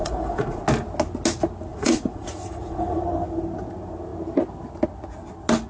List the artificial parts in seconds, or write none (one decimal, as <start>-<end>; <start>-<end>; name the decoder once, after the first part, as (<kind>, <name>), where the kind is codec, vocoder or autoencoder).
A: 0.0-0.6 (vocoder, Vocos); 1.7-3.0